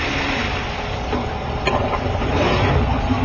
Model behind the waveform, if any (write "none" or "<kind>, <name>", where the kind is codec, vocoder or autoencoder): none